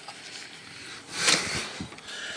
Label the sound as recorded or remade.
recorded